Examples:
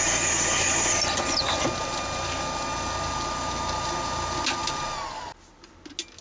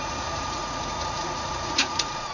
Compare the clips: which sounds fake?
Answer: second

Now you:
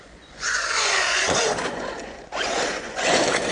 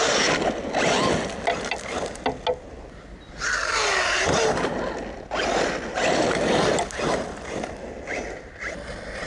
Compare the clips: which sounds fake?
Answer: first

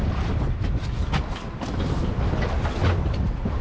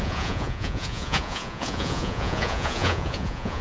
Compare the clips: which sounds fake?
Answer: second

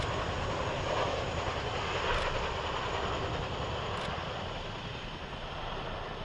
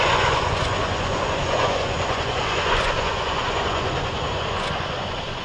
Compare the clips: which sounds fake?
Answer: second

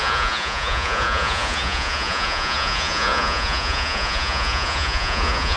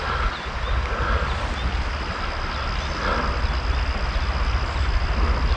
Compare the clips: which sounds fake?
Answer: first